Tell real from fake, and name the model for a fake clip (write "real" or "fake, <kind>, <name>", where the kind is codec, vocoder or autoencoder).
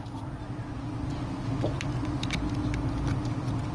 real